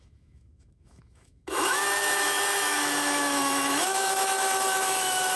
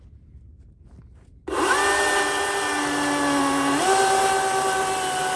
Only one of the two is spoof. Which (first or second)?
first